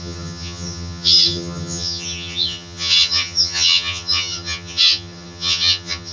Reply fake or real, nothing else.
fake